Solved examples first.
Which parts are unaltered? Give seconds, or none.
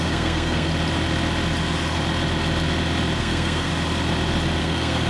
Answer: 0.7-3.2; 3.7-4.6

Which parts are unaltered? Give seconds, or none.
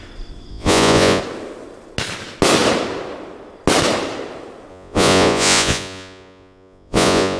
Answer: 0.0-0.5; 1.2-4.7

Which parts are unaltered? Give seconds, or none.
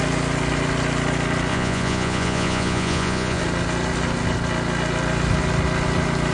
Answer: 0.0-1.5; 3.4-6.3